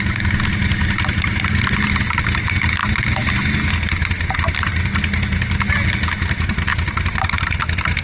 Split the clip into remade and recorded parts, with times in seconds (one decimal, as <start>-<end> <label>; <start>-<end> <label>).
0.0-8.0 recorded